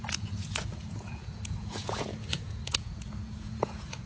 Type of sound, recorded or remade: remade